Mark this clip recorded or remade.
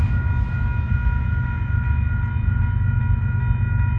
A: recorded